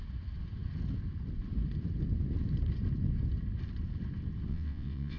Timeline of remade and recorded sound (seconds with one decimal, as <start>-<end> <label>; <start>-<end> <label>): 0.0-4.5 recorded; 4.5-5.2 remade